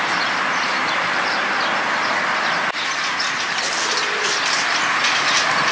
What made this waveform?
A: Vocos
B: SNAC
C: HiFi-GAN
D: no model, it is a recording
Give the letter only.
D